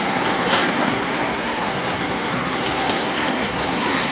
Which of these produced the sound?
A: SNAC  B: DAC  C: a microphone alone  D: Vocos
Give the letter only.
A